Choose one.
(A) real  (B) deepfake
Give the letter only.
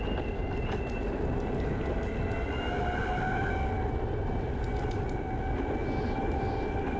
A